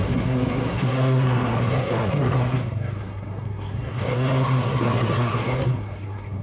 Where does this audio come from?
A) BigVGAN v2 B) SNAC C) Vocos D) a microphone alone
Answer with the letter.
B